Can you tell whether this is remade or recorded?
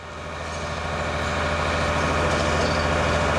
recorded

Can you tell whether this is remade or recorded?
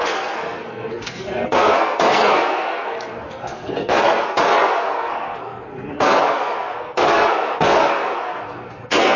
remade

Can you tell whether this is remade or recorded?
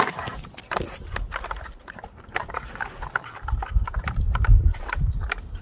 recorded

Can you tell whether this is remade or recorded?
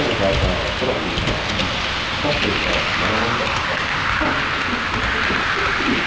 recorded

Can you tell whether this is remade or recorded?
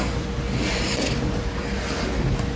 recorded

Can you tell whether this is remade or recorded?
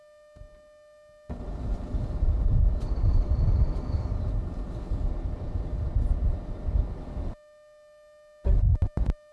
recorded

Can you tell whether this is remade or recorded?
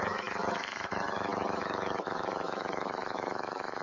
remade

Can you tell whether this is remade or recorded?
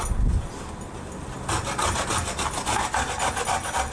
recorded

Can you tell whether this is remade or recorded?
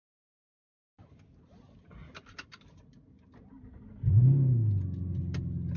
recorded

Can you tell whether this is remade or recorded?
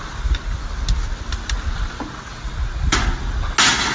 recorded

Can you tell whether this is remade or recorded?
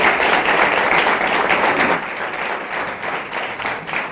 recorded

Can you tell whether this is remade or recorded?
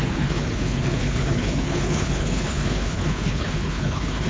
remade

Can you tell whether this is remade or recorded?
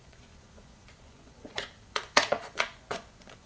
remade